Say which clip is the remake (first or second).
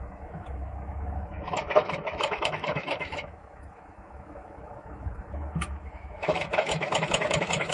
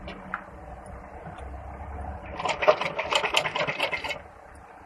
first